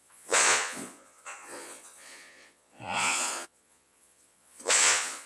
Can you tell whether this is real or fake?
fake